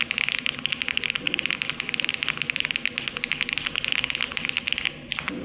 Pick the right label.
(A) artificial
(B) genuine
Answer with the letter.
B